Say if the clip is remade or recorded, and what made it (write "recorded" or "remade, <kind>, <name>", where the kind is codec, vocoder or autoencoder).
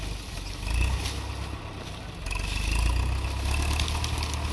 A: recorded